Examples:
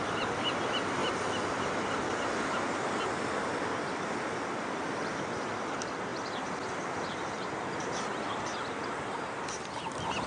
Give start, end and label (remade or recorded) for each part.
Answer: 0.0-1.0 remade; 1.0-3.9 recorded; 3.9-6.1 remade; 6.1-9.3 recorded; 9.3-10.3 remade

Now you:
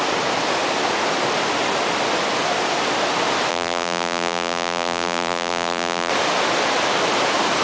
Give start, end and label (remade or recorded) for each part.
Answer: 0.0-3.5 recorded; 3.5-6.1 remade; 6.1-7.6 recorded